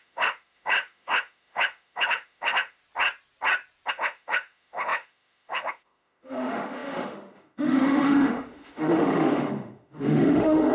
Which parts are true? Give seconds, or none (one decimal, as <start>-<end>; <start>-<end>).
2.8-3.9